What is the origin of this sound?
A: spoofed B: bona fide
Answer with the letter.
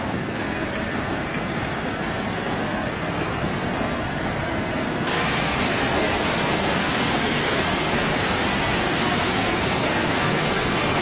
A